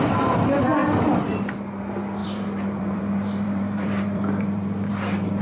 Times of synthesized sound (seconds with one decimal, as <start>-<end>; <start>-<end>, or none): 2.2-4.9